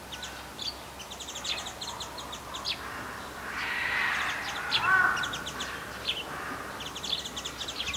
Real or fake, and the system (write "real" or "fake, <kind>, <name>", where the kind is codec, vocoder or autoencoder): real